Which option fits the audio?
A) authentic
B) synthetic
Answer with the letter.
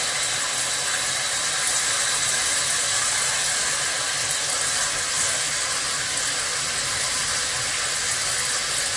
A